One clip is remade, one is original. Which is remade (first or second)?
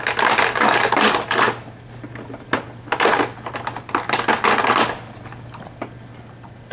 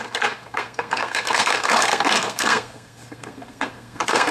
second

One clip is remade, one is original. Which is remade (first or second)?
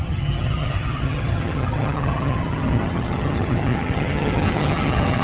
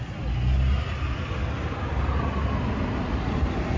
first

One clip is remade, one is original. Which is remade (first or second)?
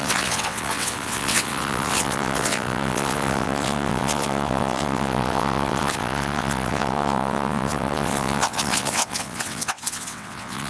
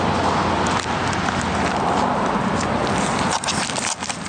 first